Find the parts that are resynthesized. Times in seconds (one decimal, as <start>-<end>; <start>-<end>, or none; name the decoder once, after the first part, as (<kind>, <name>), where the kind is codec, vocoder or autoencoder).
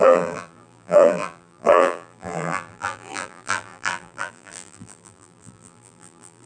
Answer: 0.0-6.5 (vocoder, BigVGAN v2)